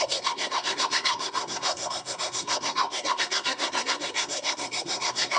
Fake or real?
fake